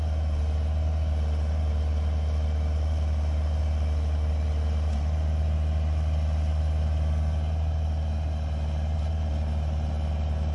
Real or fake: real